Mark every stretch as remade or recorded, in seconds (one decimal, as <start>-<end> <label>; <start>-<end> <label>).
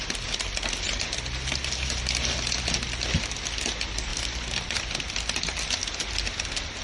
0.0-4.1 recorded; 4.1-5.7 remade; 5.7-6.8 recorded